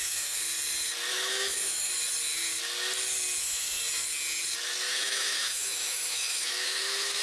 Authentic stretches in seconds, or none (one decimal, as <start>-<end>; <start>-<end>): 0.4-1.1; 1.9-3.4; 3.8-4.9